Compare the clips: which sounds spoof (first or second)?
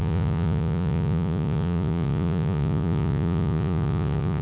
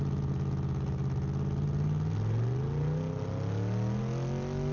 first